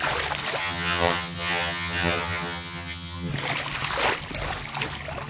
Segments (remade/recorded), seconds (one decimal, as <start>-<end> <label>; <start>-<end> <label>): 0.0-0.6 recorded; 0.6-3.3 remade; 3.3-5.3 recorded